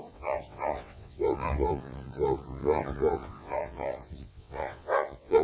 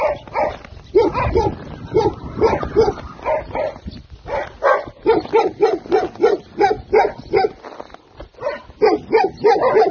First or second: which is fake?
first